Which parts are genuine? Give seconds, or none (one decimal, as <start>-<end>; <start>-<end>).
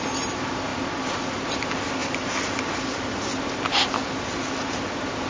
0.0-5.3